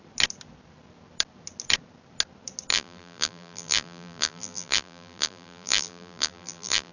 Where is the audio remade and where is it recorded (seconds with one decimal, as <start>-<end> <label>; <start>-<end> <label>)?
0.0-2.7 recorded; 2.7-6.9 remade